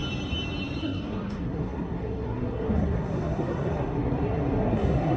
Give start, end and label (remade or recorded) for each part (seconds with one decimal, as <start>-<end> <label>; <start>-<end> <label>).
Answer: 0.0-0.8 recorded; 0.8-5.2 remade